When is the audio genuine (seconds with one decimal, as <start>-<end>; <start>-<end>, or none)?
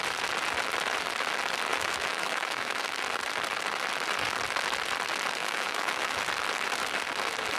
0.0-1.7; 2.8-5.4; 6.2-7.6